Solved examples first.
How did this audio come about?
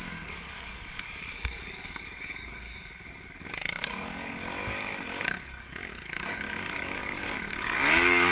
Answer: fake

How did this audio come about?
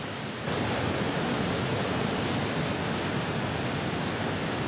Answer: real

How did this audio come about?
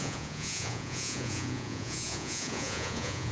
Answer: fake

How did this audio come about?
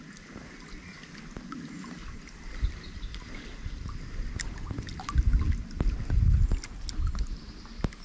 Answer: real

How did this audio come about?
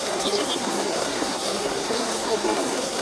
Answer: fake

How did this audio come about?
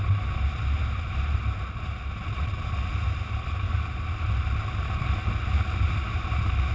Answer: real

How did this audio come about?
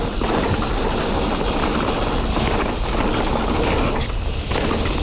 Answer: real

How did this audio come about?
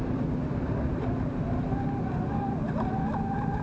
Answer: real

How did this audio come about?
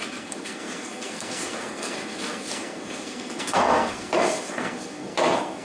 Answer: fake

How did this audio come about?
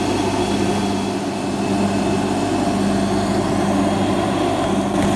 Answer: real